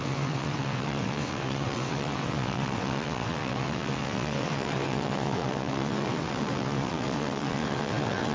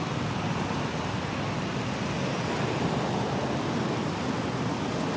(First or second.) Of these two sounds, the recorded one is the second